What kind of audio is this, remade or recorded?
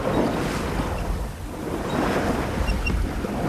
recorded